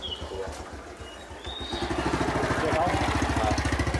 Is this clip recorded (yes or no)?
yes